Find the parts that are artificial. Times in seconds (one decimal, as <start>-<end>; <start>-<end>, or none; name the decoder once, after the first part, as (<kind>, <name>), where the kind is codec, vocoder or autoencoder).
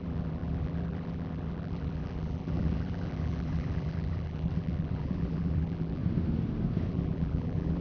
0.0-6.0 (vocoder, BigVGAN v2); 6.9-7.8